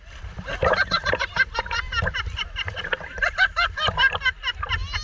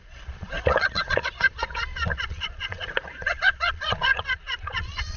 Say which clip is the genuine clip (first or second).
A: first